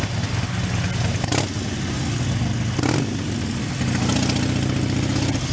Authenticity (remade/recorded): recorded